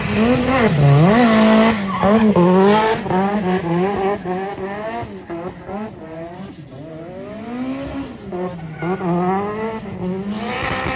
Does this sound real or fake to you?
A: real